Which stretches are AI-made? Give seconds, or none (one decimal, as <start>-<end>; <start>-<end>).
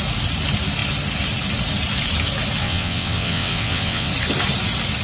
2.6-4.1